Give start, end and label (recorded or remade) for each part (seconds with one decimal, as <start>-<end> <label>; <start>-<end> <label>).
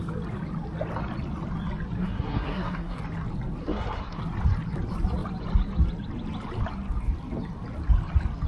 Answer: 0.0-2.0 recorded; 2.0-3.0 remade; 3.0-3.6 recorded; 3.6-4.2 remade; 4.2-8.5 recorded